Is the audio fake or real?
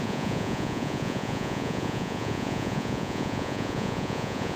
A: fake